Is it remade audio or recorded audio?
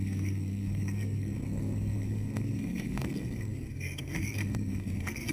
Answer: remade